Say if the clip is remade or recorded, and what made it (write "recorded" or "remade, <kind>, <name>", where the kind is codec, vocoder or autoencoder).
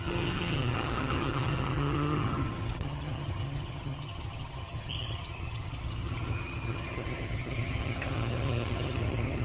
remade, vocoder, HiFi-GAN